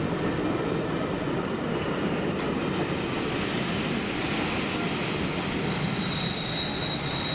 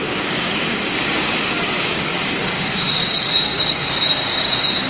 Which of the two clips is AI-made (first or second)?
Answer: second